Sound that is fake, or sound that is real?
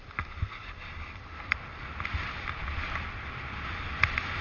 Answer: real